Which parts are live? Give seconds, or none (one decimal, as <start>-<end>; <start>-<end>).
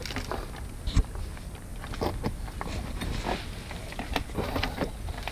0.0-5.3